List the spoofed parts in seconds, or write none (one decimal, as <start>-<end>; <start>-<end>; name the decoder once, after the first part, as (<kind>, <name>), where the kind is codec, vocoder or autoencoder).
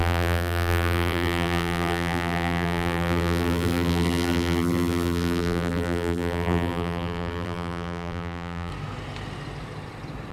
0.0-8.7 (vocoder, BigVGAN v2)